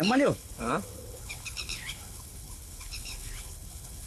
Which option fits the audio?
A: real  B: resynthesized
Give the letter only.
B